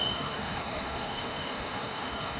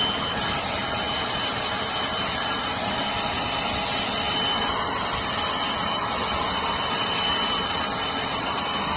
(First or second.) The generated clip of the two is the first